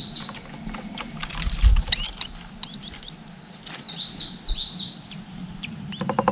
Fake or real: real